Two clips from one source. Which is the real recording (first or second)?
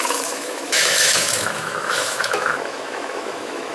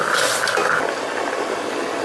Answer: second